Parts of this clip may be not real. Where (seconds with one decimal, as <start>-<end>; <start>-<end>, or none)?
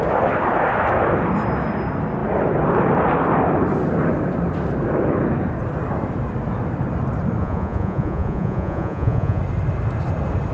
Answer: 7.4-9.4